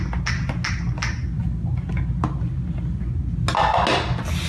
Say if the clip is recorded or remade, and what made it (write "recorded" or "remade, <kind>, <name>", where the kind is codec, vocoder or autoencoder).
recorded